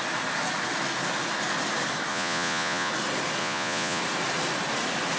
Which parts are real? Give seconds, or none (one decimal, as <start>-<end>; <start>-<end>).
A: 0.0-2.1; 2.9-3.4; 4.0-5.2

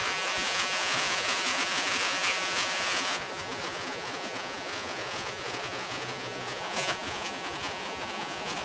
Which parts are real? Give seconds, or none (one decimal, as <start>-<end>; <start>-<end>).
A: none

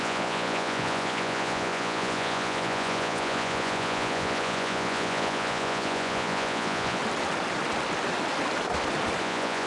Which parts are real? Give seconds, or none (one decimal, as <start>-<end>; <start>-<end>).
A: 7.0-9.2

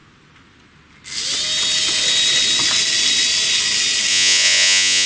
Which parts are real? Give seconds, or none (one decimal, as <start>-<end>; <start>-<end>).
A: 0.0-4.1